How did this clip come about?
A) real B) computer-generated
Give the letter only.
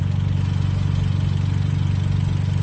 A